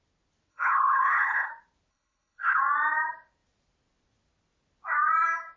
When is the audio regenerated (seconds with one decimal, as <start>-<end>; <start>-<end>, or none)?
0.5-1.5; 1.9-2.6